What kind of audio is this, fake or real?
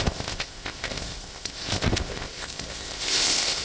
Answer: fake